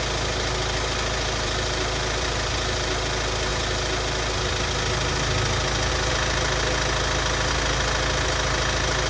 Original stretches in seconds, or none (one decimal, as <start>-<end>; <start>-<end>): 0.0-9.1